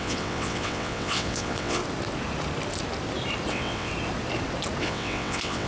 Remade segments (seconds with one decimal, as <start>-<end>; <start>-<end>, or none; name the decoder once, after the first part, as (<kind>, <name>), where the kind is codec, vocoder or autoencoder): 0.0-1.8 (vocoder, WaveNeXt); 3.5-3.9; 4.8-5.7